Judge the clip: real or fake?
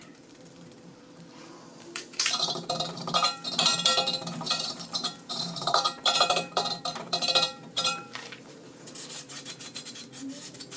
fake